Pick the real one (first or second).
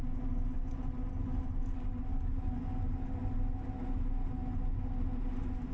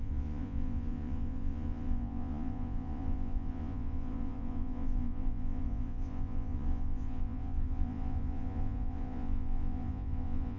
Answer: first